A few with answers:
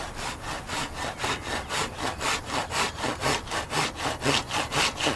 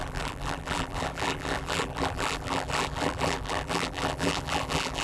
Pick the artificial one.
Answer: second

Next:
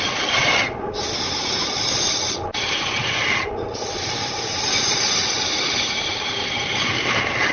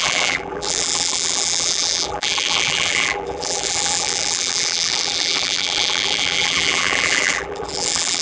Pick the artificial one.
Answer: second